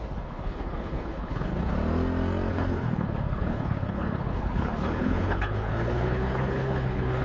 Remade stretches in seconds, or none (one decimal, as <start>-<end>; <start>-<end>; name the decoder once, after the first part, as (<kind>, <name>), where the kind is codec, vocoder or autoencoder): 0.0-1.7 (codec, HILCodec); 2.5-7.2